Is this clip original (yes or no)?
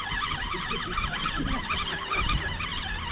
yes